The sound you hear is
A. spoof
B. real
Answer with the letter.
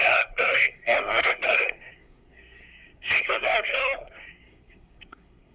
A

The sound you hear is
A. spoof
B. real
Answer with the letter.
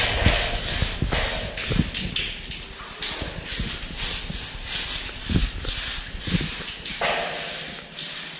B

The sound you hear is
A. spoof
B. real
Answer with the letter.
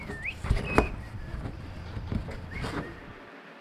A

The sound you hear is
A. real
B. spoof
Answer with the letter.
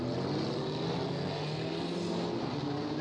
A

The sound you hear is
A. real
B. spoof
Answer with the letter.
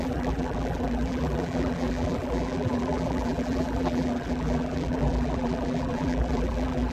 B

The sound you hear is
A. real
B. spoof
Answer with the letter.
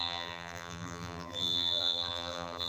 B